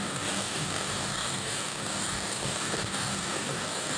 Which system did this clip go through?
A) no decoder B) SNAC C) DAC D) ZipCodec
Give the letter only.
C